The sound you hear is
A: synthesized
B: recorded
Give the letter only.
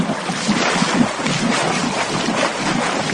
B